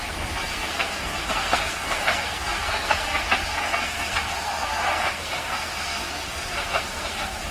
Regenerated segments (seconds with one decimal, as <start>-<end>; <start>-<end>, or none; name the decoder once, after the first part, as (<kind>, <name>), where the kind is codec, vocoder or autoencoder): 0.0-7.5 (codec, SNAC)